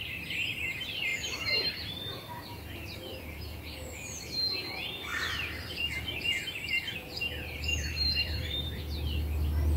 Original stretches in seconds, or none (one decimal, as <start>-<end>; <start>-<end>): 0.0-1.1; 1.7-5.1; 5.8-7.0; 8.8-9.8